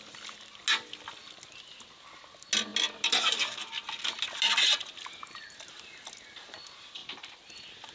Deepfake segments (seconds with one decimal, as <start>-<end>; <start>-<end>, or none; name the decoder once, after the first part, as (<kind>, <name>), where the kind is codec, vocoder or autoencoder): 7.0-7.5 (vocoder, BigVGAN v2)

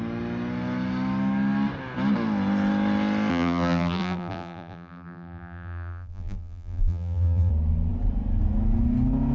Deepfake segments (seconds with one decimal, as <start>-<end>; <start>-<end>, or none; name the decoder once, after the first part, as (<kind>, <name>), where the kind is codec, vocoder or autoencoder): 3.3-7.5 (vocoder, BigVGAN v2)